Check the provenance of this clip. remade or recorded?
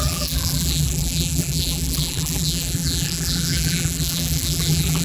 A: remade